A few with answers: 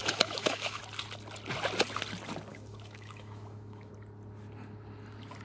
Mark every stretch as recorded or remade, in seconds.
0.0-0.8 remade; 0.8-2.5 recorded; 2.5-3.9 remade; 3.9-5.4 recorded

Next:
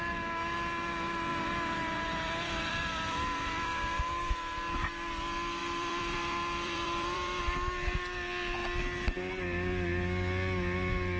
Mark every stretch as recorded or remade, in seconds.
0.0-1.3 recorded; 1.3-4.0 remade; 4.0-5.6 recorded; 5.6-7.4 remade; 7.4-11.2 recorded

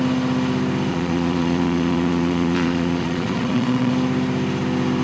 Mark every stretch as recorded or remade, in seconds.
0.0-0.9 recorded; 0.9-3.9 remade; 3.9-5.0 recorded

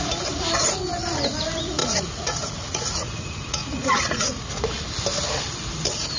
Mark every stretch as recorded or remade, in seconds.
0.0-1.8 recorded; 1.8-4.4 remade; 4.4-6.2 recorded

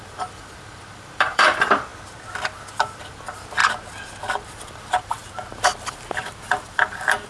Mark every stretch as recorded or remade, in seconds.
0.0-1.9 remade; 1.9-3.0 recorded; 3.0-3.6 remade; 3.6-4.5 recorded; 4.5-5.2 remade; 5.2-5.9 recorded; 5.9-7.3 remade

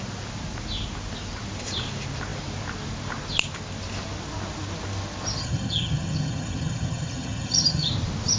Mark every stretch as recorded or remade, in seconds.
0.0-5.4 recorded; 5.4-7.9 remade; 7.9-8.4 recorded

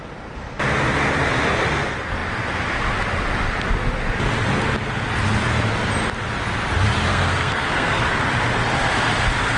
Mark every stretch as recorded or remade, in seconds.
0.0-7.1 recorded; 7.1-8.0 remade; 8.0-9.6 recorded

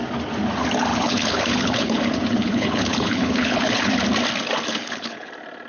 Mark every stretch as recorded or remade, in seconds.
0.0-0.9 recorded; 0.9-3.9 remade; 3.9-4.7 recorded; 4.7-5.3 remade; 5.3-5.7 recorded